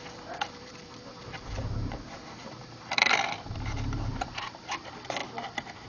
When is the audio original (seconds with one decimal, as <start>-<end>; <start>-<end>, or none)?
none